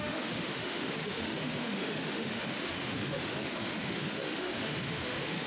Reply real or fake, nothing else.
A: fake